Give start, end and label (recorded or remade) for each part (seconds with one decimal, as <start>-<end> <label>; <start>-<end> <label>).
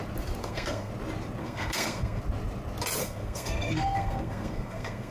0.0-0.4 recorded; 0.4-0.9 remade; 0.9-1.4 recorded; 1.4-2.2 remade; 2.2-3.0 recorded; 3.0-5.1 remade